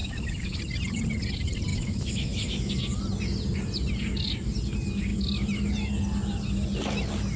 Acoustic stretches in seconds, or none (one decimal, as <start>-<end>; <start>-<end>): 0.6-1.7; 2.7-7.4

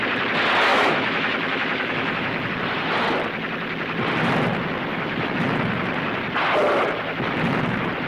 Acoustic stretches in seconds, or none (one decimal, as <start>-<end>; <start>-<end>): 0.0-0.7; 2.5-4.9; 5.4-8.1

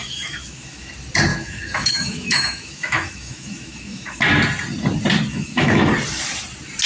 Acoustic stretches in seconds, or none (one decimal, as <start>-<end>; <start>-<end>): 0.9-1.3; 4.2-5.3; 5.9-6.9

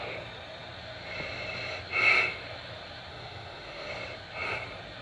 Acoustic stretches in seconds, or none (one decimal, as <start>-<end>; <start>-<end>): 0.0-3.1; 3.9-5.0

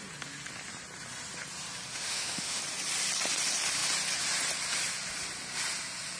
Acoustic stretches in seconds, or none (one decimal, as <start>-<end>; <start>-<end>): 0.0-1.9; 2.6-6.2

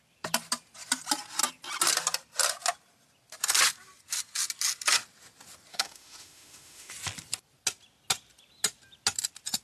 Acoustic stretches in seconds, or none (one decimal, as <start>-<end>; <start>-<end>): 0.0-5.7; 6.9-9.6